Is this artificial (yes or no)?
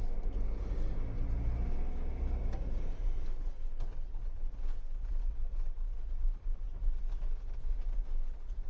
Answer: no